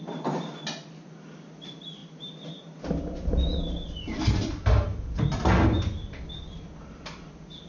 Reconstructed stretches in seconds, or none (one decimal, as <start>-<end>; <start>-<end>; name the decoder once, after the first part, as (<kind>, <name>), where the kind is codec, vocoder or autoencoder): none